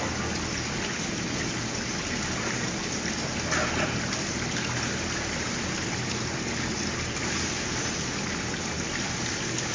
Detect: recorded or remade recorded